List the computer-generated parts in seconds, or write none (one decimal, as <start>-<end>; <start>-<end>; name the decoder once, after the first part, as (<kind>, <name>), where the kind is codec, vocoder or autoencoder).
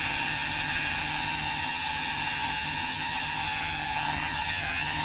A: 0.0-5.0 (vocoder, HiFi-GAN)